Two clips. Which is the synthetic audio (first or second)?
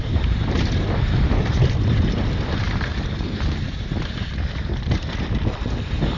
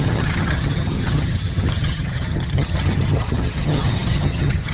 second